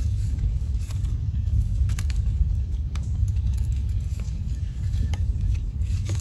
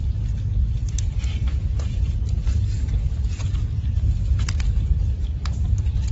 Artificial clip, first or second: first